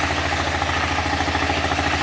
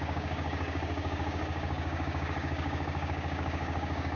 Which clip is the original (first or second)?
first